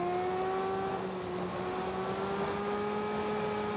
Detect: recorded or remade recorded